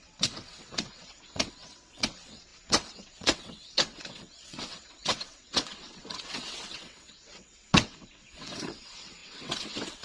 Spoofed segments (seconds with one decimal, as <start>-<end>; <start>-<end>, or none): 0.0-10.0

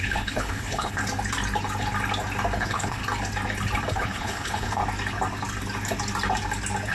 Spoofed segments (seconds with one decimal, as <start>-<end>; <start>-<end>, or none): 0.0-1.0; 2.6-3.0; 3.9-4.8